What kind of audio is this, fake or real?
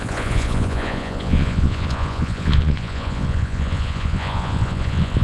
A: fake